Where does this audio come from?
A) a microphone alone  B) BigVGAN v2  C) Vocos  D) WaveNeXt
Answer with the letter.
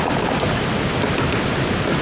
A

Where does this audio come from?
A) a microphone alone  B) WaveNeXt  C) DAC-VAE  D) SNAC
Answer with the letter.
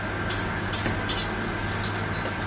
A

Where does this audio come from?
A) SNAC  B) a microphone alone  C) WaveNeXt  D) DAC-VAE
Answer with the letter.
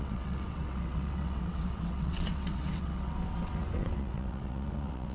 C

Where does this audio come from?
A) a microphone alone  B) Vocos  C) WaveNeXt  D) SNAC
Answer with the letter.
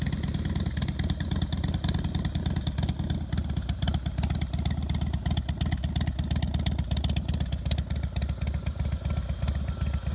A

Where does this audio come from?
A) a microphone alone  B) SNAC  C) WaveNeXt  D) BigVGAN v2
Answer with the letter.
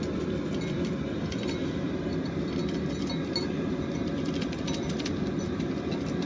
A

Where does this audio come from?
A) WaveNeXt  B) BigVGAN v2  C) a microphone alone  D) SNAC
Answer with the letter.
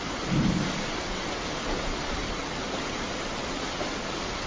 C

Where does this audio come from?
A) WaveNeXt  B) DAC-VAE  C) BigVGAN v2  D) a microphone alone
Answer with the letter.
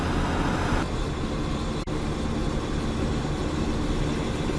D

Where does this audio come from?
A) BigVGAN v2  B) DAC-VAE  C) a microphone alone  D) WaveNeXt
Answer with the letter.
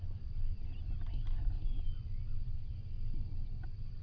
C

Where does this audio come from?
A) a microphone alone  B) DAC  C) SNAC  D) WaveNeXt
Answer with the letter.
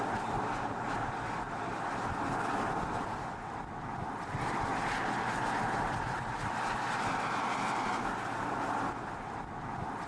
A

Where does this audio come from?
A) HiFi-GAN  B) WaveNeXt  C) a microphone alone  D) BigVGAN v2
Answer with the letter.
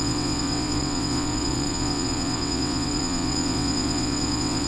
B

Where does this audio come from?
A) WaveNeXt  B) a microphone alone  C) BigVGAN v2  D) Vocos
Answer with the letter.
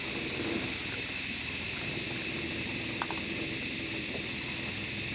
B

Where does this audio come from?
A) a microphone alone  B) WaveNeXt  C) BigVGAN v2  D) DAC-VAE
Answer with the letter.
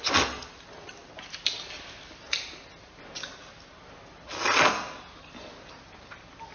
A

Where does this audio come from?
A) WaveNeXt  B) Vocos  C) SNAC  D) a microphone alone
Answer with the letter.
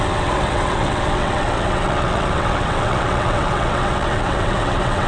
A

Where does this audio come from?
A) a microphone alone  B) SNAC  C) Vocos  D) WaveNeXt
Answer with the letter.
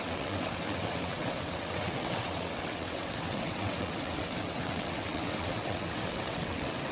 D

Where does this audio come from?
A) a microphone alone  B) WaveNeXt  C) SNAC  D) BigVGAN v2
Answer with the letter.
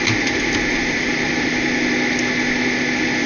A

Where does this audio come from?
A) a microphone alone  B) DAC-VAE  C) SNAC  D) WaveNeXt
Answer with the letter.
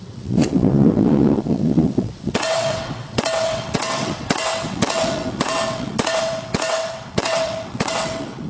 D